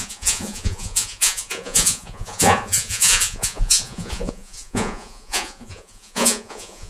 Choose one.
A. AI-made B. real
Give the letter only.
A